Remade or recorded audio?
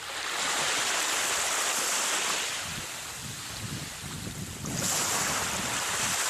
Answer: recorded